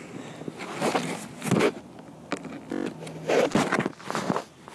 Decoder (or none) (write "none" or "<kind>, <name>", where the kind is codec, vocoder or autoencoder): none